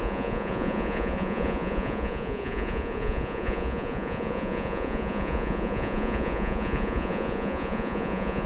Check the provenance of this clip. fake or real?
fake